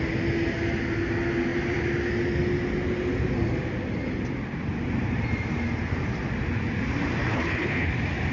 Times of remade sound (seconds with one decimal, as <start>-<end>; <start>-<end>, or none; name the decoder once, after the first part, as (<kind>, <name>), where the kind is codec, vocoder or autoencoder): 7.3-7.9 (codec, HILCodec)